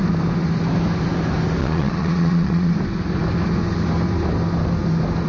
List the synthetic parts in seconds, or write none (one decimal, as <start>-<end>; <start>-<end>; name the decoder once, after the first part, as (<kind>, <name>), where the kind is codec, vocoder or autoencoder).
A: 1.6-2.7 (vocoder, Vocos)